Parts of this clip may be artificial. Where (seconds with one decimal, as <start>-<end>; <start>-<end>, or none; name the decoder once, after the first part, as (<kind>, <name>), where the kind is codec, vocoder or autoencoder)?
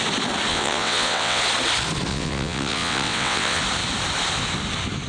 0.5-1.4 (vocoder, WaveNeXt); 2.1-3.6